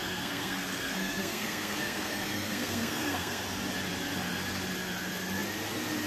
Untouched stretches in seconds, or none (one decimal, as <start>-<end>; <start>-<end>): 3.4-6.1